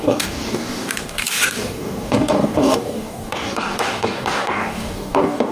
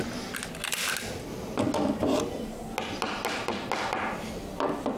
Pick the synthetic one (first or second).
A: first